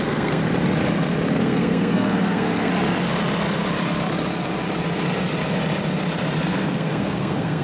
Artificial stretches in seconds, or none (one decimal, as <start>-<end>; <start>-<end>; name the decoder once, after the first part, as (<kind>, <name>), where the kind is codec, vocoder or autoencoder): 0.0-0.4 (codec, SNAC); 1.3-2.7; 6.7-7.6